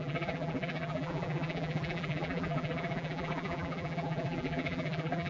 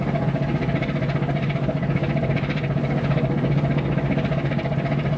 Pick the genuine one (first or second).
second